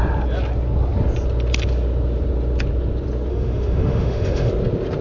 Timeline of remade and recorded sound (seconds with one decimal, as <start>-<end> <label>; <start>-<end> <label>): 0.0-3.3 recorded; 3.3-4.5 remade; 4.5-5.0 recorded